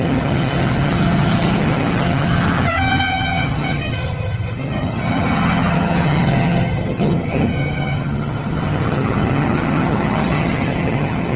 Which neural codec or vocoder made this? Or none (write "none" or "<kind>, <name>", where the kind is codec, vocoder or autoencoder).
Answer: vocoder, HiFi-GAN